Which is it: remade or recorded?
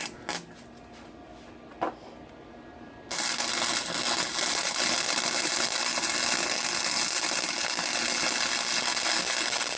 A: recorded